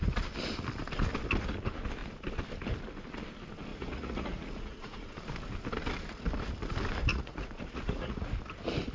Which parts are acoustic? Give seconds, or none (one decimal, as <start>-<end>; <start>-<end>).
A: 0.0-3.7; 5.2-7.1; 8.3-8.9

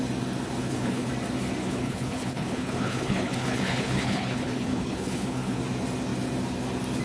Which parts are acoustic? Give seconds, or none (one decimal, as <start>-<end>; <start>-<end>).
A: 0.0-0.6; 1.1-1.6; 5.6-7.0

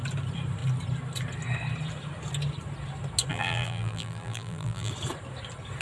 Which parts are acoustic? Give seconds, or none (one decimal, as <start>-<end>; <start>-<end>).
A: 0.0-3.3; 4.9-5.8

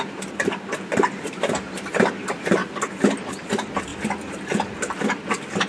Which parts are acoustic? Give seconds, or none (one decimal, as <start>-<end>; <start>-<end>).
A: 2.6-3.3; 3.9-5.7